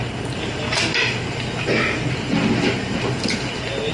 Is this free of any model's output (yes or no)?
yes